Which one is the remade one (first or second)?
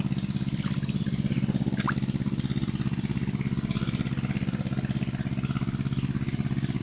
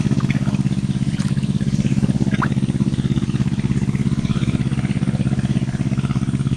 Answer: second